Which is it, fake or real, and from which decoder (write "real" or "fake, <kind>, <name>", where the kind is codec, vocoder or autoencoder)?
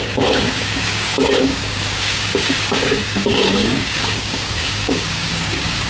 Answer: fake, codec, DAC